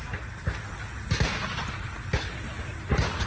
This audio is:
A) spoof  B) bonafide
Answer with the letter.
B